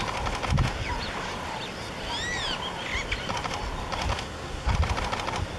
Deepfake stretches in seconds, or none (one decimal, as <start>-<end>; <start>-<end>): 4.1-4.7